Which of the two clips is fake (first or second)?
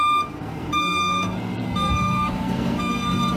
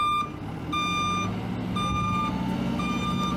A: first